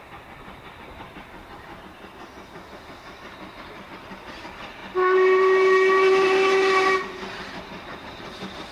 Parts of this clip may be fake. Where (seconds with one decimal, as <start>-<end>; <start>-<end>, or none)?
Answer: none